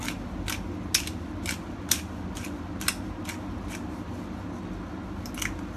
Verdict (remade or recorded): recorded